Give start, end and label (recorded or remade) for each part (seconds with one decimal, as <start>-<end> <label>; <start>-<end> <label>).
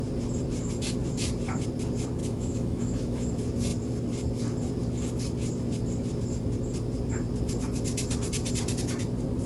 0.0-2.2 recorded; 2.2-3.3 remade; 3.3-9.5 recorded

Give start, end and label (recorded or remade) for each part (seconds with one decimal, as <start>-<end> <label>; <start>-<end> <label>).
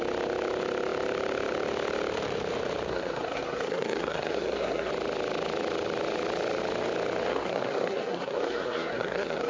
0.0-2.9 recorded; 2.9-4.9 remade; 4.9-7.3 recorded; 7.3-9.5 remade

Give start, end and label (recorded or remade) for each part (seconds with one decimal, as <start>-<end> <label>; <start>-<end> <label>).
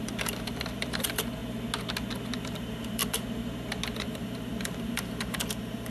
0.0-1.4 remade; 1.4-2.5 recorded; 2.5-3.0 remade; 3.0-4.0 recorded; 4.0-5.9 remade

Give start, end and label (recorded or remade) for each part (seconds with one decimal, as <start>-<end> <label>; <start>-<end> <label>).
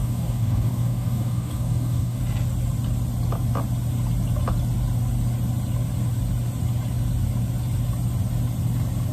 0.0-2.2 remade; 2.2-9.1 recorded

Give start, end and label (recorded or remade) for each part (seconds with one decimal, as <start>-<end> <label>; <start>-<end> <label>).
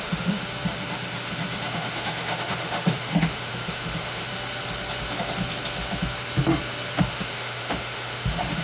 0.0-0.4 remade; 0.4-1.7 recorded; 1.7-4.3 remade; 4.3-7.0 recorded; 7.0-8.6 remade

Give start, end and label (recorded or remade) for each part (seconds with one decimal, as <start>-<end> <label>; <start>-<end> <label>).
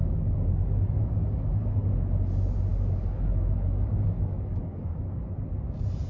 0.0-1.9 remade; 1.9-2.7 recorded; 2.7-5.2 remade; 5.2-6.1 recorded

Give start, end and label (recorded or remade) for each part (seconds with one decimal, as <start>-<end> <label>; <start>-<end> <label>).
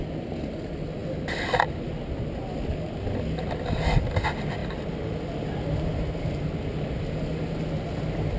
0.0-8.4 recorded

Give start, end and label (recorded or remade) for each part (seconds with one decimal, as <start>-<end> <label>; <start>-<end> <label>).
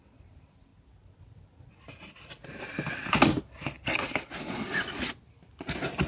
0.0-6.1 recorded